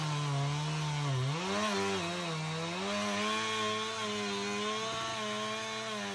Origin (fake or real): real